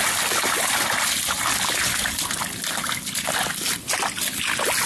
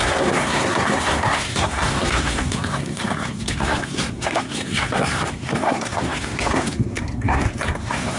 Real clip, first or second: first